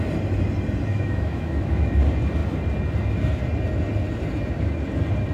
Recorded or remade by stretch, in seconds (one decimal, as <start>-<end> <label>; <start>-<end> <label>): 0.0-0.9 recorded; 0.9-1.9 remade; 1.9-5.3 recorded